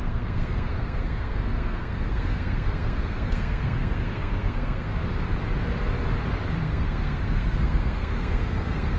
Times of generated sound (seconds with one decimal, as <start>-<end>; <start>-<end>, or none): 0.0-5.0; 6.6-9.0